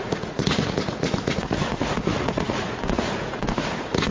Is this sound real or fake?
fake